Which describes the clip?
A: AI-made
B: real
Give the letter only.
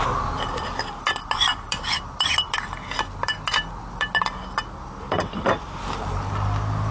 B